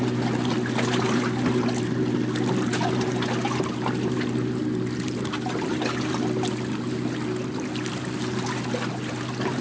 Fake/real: real